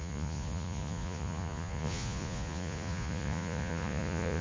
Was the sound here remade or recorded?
remade